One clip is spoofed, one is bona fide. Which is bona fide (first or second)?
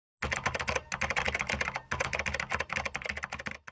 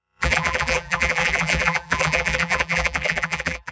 first